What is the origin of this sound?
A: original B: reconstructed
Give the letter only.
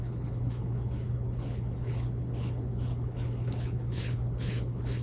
B